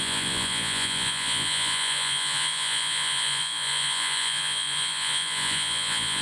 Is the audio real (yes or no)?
no